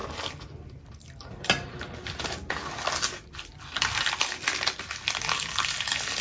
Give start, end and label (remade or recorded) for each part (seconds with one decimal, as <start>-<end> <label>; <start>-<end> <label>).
0.0-6.2 recorded